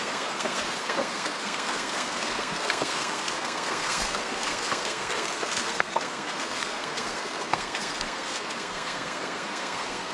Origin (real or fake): fake